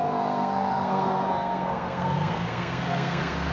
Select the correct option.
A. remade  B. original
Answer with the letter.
A